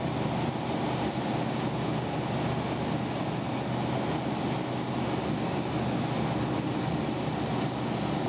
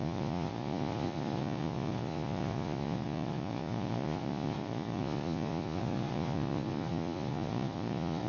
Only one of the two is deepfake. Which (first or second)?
second